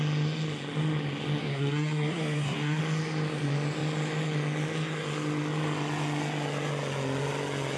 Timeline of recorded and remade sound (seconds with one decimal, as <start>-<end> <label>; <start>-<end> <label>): 0.0-1.4 recorded; 1.4-2.8 remade; 2.8-7.8 recorded